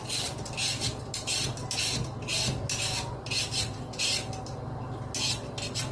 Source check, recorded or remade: recorded